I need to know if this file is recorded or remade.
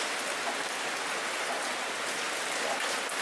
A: recorded